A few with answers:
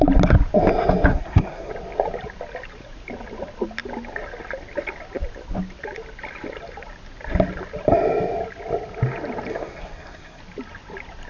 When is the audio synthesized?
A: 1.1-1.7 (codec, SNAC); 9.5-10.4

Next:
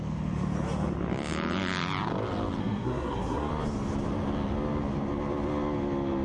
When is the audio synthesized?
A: 2.6-3.5 (codec, SNAC)

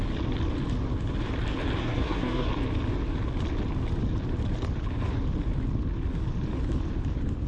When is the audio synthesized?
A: 1.8-2.5 (codec, SNAC)

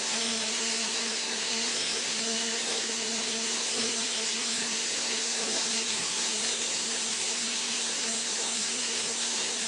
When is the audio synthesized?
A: 0.0-9.7 (codec, SNAC)

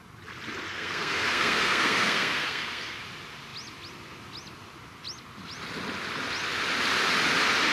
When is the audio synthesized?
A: 0.7-3.0 (codec, SNAC)

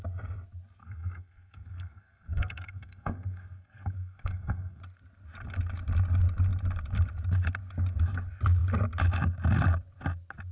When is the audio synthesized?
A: 0.8-4.8 (codec, SNAC)

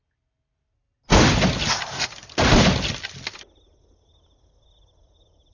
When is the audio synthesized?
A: none

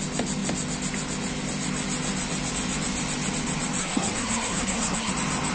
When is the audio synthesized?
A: 3.8-5.1 (codec, SNAC)